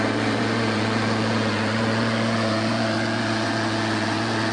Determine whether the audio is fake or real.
fake